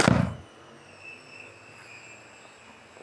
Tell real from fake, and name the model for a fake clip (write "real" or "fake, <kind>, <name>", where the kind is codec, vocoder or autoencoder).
real